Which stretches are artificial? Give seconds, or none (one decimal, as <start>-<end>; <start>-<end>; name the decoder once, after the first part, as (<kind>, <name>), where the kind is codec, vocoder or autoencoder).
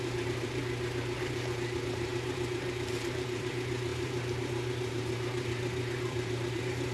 0.0-0.6 (vocoder, BigVGAN v2); 1.2-6.9